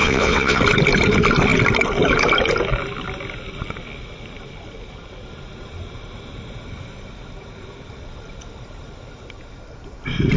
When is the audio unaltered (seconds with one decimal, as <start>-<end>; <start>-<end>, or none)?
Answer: 0.6-10.4